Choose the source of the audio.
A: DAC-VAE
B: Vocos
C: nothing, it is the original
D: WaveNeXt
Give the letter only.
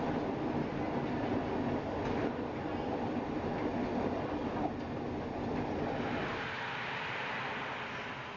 C